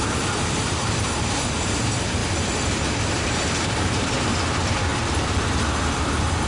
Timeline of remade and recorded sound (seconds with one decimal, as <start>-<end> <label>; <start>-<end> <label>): 0.0-2.2 remade; 2.2-3.1 recorded; 3.1-4.9 remade; 4.9-6.5 recorded